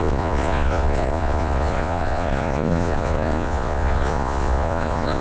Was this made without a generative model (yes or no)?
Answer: no